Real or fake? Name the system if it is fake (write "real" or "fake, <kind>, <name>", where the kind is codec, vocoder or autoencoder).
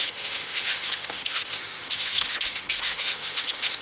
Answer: fake, autoencoder, DAC-VAE